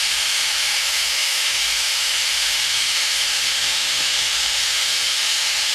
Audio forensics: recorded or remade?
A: remade